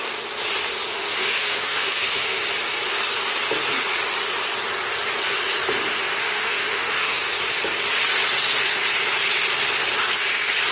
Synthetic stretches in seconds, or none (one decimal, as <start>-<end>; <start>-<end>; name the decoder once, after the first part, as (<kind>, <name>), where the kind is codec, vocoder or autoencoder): 0.9-2.4 (autoencoder, DAC-VAE); 6.2-7.2